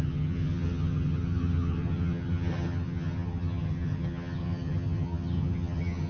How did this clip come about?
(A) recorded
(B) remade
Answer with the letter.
B